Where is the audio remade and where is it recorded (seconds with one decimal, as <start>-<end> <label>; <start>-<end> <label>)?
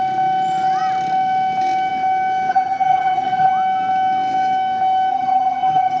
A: 0.0-2.5 recorded; 2.5-3.5 remade; 3.5-5.1 recorded; 5.1-6.0 remade